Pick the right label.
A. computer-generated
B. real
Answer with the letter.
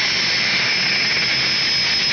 B